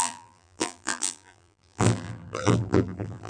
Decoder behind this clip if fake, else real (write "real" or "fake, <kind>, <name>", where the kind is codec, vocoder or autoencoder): fake, vocoder, BigVGAN v2